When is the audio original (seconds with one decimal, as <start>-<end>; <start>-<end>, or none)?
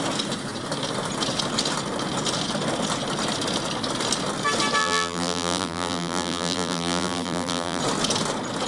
0.0-4.8; 7.8-8.7